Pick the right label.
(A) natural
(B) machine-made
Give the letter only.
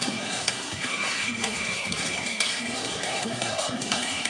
B